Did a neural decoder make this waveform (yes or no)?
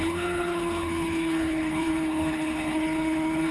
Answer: yes